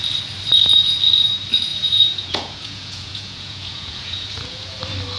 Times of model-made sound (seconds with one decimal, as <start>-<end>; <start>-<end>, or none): 1.7-4.8